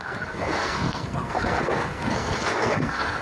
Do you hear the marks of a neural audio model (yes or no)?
yes